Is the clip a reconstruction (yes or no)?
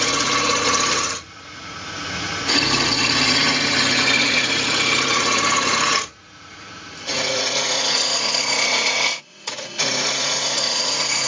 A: yes